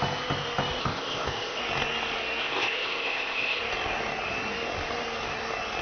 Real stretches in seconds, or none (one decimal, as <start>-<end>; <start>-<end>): 0.0-0.8; 1.6-2.4; 3.6-5.8